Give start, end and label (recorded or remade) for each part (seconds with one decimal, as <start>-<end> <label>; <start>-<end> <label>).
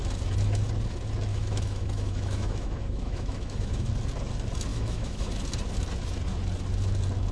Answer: 0.0-1.3 recorded; 1.3-3.9 remade; 3.9-4.7 recorded; 4.7-5.3 remade; 5.3-7.3 recorded